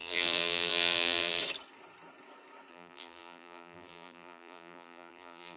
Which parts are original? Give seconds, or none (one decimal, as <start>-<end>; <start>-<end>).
1.4-2.7

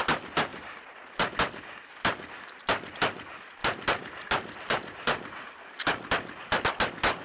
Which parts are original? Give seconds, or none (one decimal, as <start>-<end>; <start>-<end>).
0.0-0.5; 1.3-3.6; 5.8-7.2

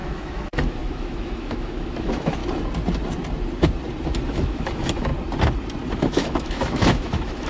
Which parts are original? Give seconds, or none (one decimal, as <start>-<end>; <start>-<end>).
2.4-4.3; 5.1-6.0

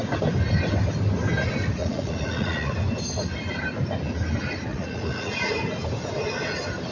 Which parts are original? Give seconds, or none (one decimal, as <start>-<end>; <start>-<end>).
0.0-1.8; 2.7-4.7; 5.5-6.9

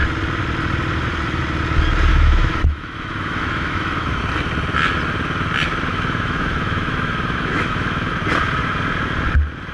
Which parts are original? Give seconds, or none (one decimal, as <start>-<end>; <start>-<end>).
0.0-2.1; 4.2-5.9; 8.1-9.7

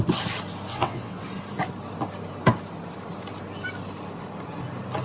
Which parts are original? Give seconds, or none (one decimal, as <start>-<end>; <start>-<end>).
0.0-0.7; 1.3-5.0